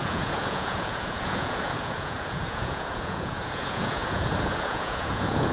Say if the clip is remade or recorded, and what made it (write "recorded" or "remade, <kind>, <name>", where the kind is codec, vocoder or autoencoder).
remade, vocoder, Vocos